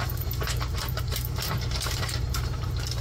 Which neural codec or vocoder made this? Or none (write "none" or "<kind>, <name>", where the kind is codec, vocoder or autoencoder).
vocoder, BigVGAN v2